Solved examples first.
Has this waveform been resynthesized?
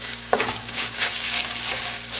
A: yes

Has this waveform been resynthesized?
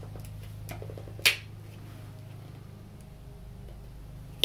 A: no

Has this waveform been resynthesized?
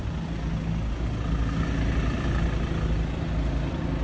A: no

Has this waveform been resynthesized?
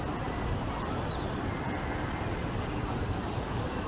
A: no